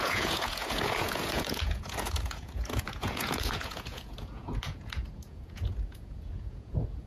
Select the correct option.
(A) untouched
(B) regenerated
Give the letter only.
B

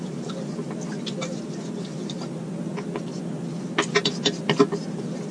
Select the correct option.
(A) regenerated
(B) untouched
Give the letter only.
B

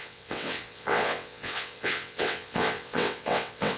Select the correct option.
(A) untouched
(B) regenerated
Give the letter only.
B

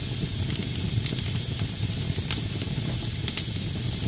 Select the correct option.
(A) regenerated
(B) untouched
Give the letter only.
B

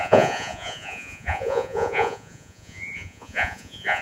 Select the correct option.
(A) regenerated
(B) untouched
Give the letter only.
A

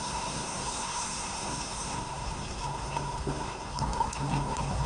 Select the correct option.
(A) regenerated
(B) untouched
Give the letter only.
A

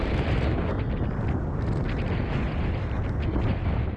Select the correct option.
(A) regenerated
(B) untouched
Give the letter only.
B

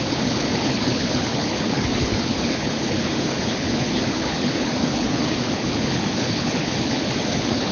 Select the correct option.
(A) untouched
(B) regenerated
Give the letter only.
B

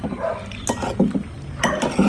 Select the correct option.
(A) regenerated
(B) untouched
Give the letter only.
B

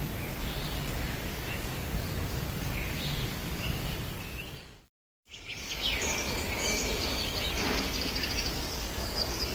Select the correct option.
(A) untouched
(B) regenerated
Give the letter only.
B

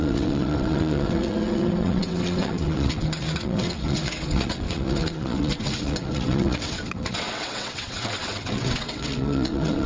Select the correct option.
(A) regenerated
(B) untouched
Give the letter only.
A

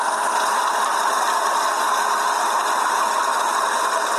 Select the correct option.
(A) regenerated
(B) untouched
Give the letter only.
B